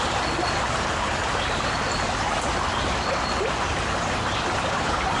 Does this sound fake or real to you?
real